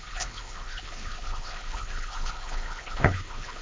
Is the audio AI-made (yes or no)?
yes